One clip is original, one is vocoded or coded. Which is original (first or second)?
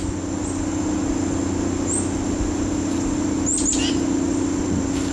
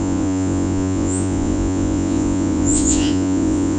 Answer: first